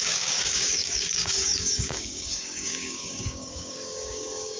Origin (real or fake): fake